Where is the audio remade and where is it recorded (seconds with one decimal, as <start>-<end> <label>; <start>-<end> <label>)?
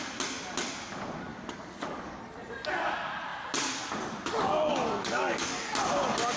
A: 0.0-1.3 recorded; 1.3-2.2 remade; 2.2-4.7 recorded; 4.7-5.7 remade; 5.7-6.4 recorded